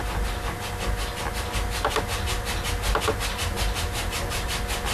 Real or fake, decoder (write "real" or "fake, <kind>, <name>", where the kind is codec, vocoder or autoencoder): real